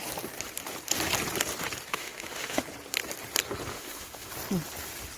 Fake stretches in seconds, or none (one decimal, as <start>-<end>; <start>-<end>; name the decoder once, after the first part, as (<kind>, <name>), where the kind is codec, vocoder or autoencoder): 1.9-2.6 (autoencoder, DAC-VAE); 3.7-4.3